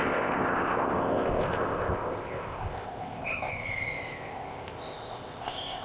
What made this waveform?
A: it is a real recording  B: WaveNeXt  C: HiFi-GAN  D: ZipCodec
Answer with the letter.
D